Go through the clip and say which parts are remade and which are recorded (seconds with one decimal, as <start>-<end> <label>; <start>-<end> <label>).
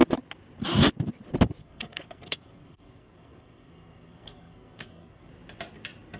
0.0-1.6 recorded; 1.6-5.3 remade; 5.3-6.2 recorded